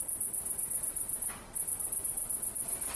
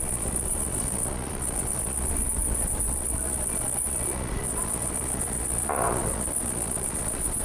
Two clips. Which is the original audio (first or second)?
first